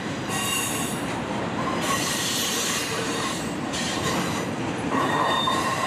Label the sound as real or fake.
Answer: fake